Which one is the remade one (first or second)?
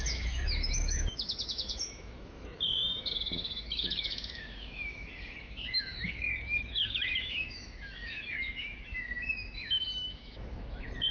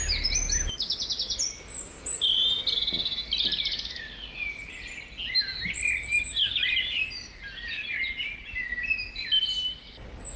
first